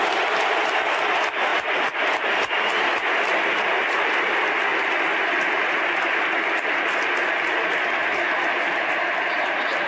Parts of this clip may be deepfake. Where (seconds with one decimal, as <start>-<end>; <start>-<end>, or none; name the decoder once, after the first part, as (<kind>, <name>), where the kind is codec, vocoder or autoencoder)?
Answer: none